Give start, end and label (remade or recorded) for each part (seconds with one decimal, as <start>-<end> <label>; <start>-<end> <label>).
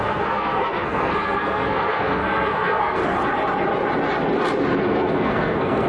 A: 0.0-3.0 remade; 3.0-4.8 recorded; 4.8-5.9 remade